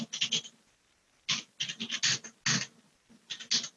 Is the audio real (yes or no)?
yes